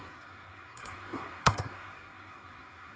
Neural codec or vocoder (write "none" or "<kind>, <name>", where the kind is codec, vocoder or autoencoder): codec, SNAC